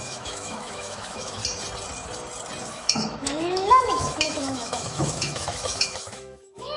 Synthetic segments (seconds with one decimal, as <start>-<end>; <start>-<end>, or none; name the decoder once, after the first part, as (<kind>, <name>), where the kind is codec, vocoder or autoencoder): 0.0-1.4 (autoencoder, DAC-VAE); 2.6-6.8